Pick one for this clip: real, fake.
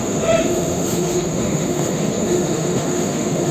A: fake